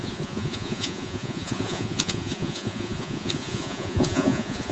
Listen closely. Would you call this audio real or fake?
fake